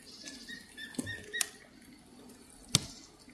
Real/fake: real